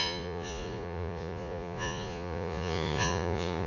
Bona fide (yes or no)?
no